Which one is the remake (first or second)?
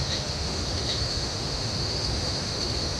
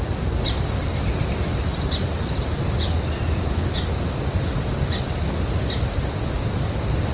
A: first